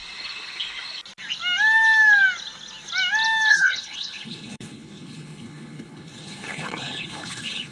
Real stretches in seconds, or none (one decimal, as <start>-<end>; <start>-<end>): 0.0-3.5